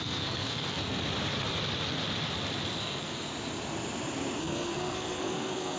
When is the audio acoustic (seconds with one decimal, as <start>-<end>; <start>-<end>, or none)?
1.0-2.8; 3.3-4.4